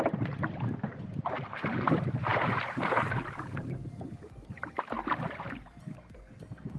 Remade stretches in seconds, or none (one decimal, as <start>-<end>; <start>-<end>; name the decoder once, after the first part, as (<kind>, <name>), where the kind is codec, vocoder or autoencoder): none